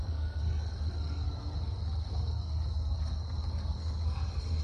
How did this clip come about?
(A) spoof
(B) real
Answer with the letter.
A